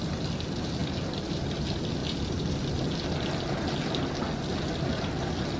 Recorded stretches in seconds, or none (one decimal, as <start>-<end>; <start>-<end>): 0.0-5.6